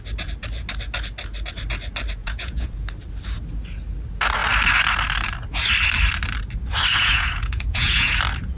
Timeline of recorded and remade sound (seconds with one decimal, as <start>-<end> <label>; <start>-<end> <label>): 0.0-2.2 recorded; 2.2-2.7 remade; 2.7-6.9 recorded; 6.9-8.2 remade; 8.2-8.6 recorded